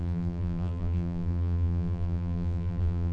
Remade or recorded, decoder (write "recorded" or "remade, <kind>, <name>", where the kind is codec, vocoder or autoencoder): remade, vocoder, BigVGAN v2